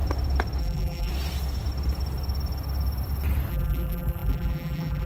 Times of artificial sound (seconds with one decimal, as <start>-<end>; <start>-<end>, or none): 0.6-1.1; 3.5-5.1